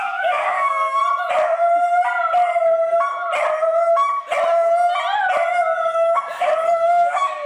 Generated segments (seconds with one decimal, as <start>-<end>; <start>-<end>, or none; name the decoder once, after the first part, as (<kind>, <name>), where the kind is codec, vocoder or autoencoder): 0.0-1.0 (codec, DAC); 5.5-7.5